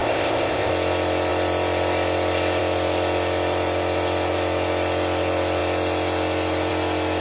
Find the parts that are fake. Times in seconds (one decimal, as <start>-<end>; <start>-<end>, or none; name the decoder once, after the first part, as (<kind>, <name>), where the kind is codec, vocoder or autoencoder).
0.0-0.7 (codec, ZipCodec)